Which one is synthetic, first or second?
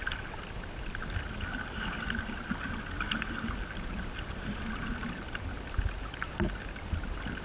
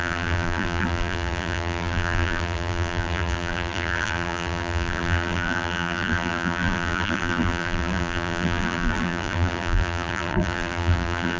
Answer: second